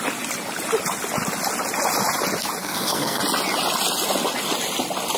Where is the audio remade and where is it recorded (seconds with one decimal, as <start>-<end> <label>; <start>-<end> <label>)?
0.0-2.6 recorded; 2.6-3.2 remade; 3.2-5.2 recorded